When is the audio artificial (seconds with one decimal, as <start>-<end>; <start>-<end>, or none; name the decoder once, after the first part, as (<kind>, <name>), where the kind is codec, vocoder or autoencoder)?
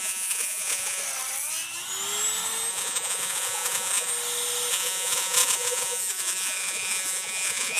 0.0-1.0 (vocoder, Vocos); 2.7-4.1; 4.7-7.8